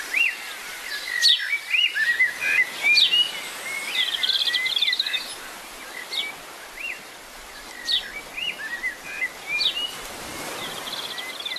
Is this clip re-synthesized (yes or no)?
no